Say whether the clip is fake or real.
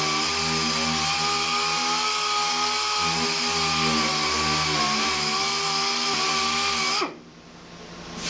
real